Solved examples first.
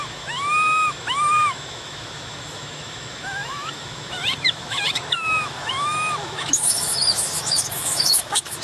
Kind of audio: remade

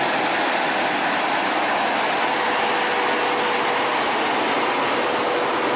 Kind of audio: recorded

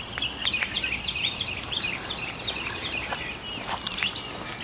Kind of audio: recorded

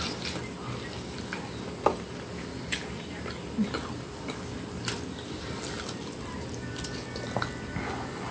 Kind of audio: recorded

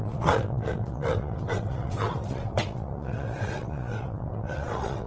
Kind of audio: remade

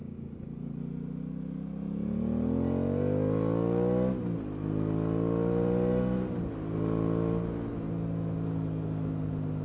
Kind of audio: recorded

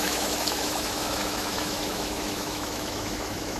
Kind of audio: remade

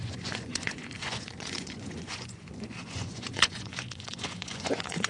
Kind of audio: remade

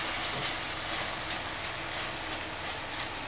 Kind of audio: recorded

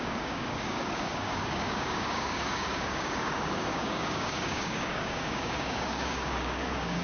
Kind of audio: remade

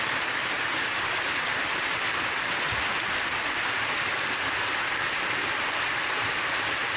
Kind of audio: recorded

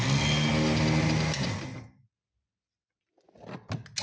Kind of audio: recorded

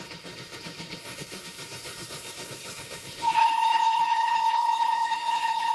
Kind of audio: remade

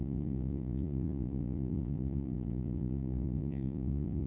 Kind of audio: remade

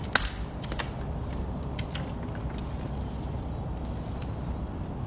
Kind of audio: recorded